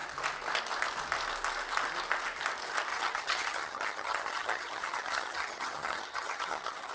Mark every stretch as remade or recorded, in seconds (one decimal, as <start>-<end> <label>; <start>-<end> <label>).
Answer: 0.0-2.9 recorded; 2.9-6.9 remade